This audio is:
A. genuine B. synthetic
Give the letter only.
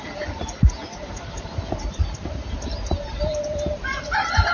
B